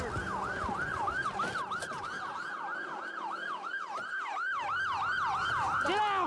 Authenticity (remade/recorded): recorded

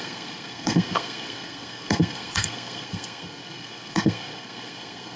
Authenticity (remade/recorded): remade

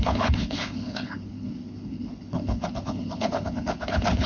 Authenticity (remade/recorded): remade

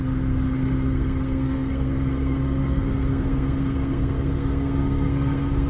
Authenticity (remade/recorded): remade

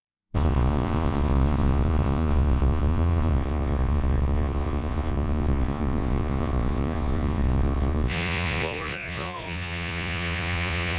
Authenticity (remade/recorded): remade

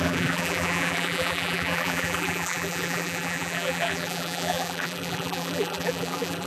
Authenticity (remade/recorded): remade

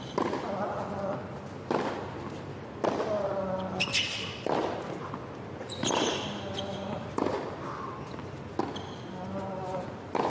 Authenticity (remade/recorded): recorded